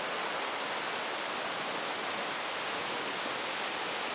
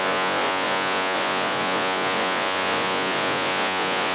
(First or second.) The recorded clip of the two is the first